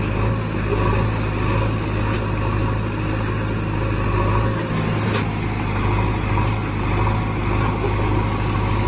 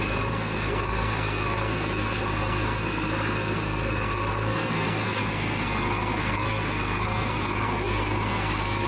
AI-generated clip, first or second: second